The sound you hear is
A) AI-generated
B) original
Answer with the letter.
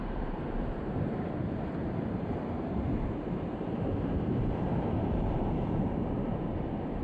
A